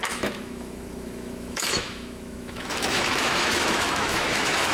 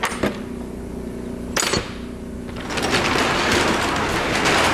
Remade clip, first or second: first